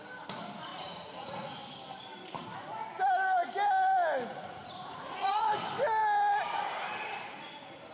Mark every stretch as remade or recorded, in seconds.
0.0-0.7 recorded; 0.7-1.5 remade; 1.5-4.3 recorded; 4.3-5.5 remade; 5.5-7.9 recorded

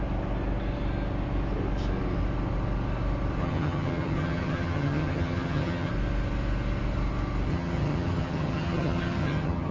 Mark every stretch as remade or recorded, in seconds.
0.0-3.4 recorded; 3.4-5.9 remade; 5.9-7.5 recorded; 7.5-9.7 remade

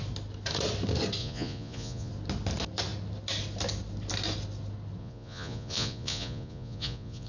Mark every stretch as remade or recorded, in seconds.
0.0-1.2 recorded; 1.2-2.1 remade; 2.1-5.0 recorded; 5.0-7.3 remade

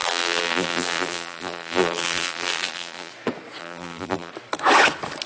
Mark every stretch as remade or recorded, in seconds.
0.0-3.1 remade; 3.1-3.6 recorded; 3.6-4.3 remade; 4.3-5.3 recorded